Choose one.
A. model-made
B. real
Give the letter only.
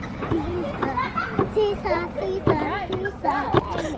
B